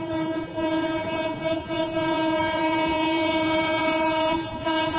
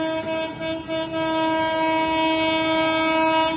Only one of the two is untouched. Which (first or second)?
second